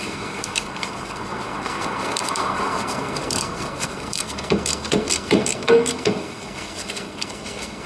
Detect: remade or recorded remade